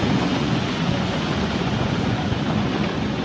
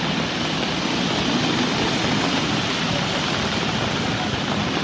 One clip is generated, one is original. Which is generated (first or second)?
first